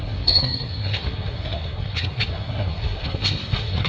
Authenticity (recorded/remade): remade